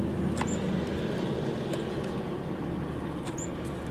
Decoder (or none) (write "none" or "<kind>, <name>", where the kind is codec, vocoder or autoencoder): none